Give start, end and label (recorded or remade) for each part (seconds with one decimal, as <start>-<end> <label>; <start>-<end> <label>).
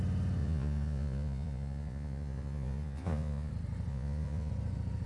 0.0-0.4 recorded; 0.4-3.5 remade; 3.5-3.9 recorded; 3.9-4.5 remade; 4.5-5.1 recorded